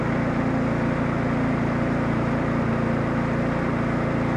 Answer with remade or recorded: recorded